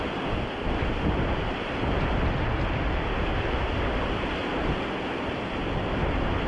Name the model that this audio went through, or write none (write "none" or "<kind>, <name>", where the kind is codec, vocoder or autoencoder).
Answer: none